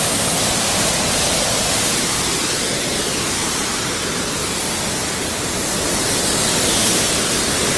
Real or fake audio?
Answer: real